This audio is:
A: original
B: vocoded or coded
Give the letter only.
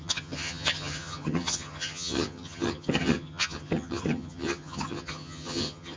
B